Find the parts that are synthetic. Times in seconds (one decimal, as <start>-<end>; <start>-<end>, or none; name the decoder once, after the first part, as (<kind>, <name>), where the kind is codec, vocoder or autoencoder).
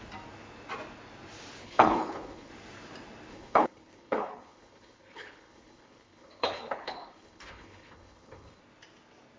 1.6-2.5 (codec, HILCodec); 3.3-8.6